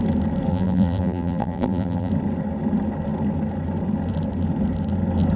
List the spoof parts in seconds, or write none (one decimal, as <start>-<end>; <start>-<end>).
0.5-2.1